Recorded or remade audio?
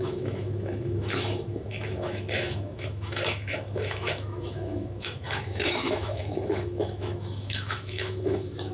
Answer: remade